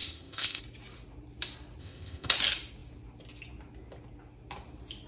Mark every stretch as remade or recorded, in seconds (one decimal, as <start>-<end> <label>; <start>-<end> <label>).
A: 0.0-0.6 remade; 0.6-1.8 recorded; 1.8-2.3 remade; 2.3-5.1 recorded